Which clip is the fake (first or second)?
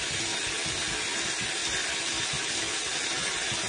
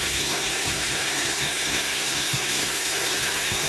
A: second